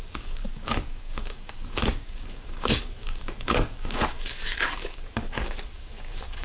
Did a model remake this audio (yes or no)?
yes